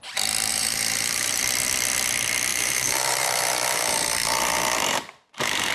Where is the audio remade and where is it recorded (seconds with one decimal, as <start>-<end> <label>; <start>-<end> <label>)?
0.0-0.5 recorded; 0.5-1.4 remade; 1.4-2.5 recorded; 2.5-5.7 remade